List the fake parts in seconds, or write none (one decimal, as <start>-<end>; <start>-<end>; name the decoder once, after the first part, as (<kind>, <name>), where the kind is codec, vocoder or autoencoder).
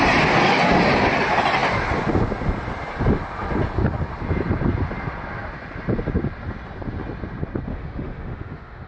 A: 7.7-8.9 (autoencoder, DAC-VAE)